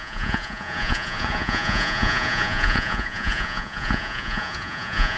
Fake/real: fake